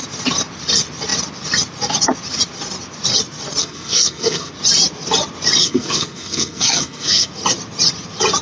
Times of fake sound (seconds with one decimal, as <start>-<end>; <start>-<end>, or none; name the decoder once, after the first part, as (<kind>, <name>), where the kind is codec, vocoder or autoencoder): 3.6-4.5 (codec, SNAC); 5.6-7.3